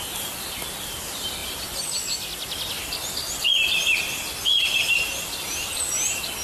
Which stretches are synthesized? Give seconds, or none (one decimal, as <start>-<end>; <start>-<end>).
none